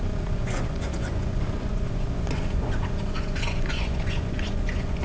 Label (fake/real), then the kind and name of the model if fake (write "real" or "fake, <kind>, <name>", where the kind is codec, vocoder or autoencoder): fake, vocoder, Vocos